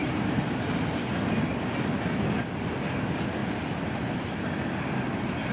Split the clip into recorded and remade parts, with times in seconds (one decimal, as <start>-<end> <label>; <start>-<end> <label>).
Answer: 0.0-5.5 recorded